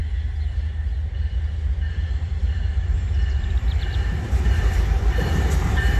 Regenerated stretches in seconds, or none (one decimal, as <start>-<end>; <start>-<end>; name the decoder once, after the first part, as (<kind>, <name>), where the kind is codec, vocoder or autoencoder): 1.9-6.0 (vocoder, BigVGAN v2)